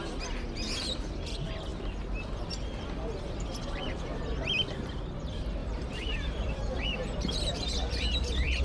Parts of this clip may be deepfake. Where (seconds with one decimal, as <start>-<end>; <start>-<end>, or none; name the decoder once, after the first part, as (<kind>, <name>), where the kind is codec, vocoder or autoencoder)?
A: 5.6-8.6 (vocoder, BigVGAN v2)